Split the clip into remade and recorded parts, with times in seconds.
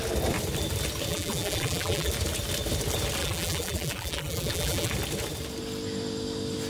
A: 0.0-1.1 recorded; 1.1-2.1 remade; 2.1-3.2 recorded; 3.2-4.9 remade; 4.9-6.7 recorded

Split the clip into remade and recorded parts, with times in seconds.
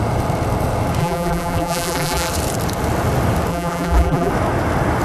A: 0.0-1.0 recorded; 1.0-2.3 remade; 2.3-3.5 recorded; 3.5-4.3 remade; 4.3-5.0 recorded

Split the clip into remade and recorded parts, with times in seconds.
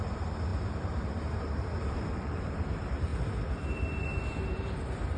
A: 0.0-3.1 remade; 3.1-4.5 recorded; 4.5-5.2 remade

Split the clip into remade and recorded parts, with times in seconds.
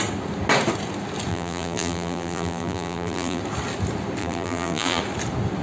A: 0.0-1.3 recorded; 1.3-3.4 remade; 3.4-4.2 recorded; 4.2-5.0 remade; 5.0-5.6 recorded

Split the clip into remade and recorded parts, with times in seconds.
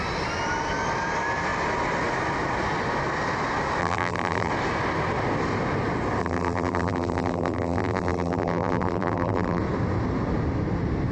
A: 0.0-3.8 recorded; 3.8-4.5 remade; 4.5-6.2 recorded; 6.2-9.6 remade; 9.6-11.1 recorded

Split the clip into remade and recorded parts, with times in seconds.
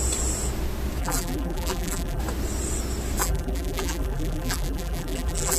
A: 0.0-1.0 recorded; 1.0-2.2 remade; 2.2-3.2 recorded; 3.2-5.6 remade